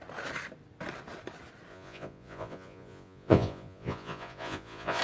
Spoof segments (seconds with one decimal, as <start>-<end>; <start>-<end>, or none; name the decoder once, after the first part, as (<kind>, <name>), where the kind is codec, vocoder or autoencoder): 1.7-5.0 (vocoder, Vocos)